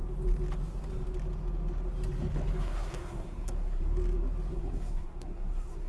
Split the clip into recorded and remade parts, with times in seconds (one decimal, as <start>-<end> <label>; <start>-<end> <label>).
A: 0.0-2.6 recorded; 2.6-3.8 remade; 3.8-4.5 recorded; 4.5-5.9 remade